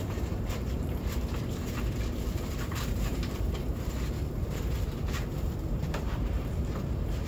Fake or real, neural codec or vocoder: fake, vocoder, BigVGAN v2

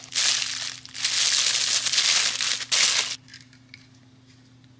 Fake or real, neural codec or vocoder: real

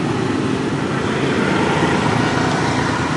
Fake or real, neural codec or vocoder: real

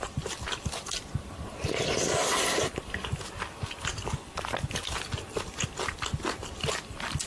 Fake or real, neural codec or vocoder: real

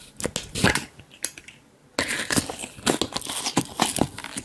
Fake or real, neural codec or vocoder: real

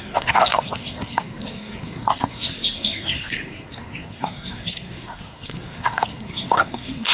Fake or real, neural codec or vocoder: fake, codec, SNAC